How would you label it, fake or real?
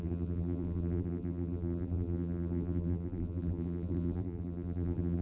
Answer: fake